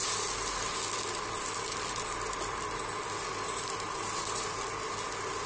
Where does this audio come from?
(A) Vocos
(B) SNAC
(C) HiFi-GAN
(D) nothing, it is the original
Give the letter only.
D